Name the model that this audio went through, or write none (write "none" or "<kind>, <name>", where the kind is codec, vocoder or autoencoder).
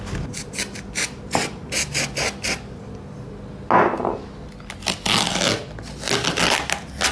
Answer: none